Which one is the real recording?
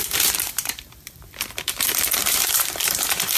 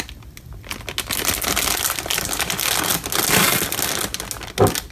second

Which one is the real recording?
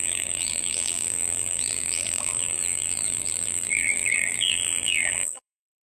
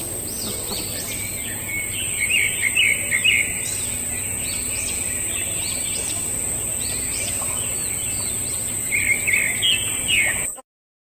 second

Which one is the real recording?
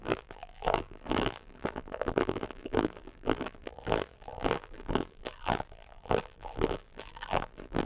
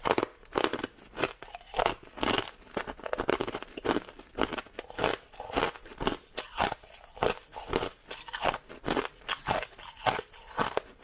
second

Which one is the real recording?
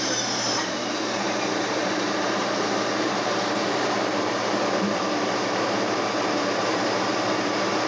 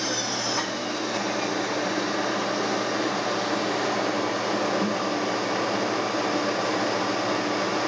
second